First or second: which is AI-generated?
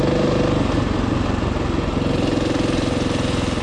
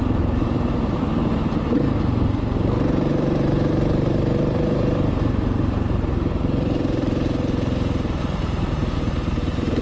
second